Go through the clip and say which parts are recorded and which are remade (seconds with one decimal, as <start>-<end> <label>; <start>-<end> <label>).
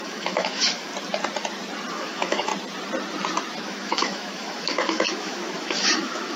0.0-0.9 remade; 0.9-1.9 recorded; 1.9-2.5 remade; 2.5-3.6 recorded; 3.6-6.4 remade